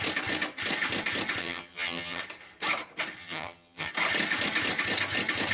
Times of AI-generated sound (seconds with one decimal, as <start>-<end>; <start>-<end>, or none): 1.4-2.2; 3.2-3.9